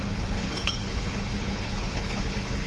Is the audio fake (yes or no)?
yes